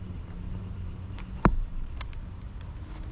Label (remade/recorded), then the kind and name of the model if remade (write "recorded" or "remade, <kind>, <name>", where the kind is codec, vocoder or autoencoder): remade, vocoder, BigVGAN v2